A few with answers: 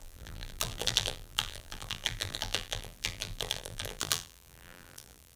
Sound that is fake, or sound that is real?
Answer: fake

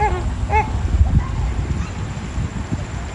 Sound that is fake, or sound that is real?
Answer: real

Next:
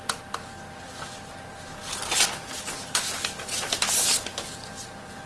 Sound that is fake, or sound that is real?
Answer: real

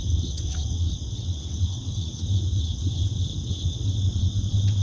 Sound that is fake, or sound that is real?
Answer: fake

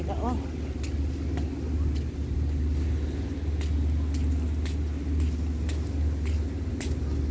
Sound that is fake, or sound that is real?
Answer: real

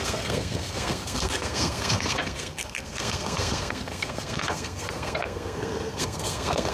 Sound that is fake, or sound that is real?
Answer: fake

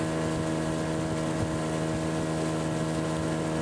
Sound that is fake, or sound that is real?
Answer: real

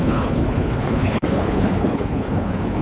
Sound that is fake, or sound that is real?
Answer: fake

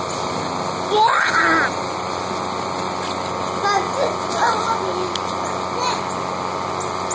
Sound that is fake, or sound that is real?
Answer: real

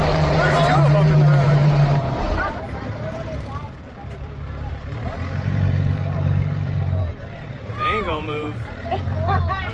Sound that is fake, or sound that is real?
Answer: fake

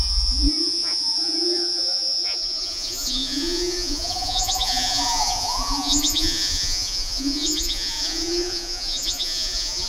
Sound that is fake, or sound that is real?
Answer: fake